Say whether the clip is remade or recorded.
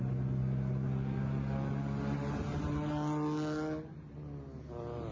recorded